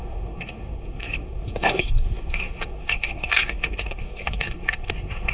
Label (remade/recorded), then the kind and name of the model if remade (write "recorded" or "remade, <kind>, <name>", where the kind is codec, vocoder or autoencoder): remade, codec, SNAC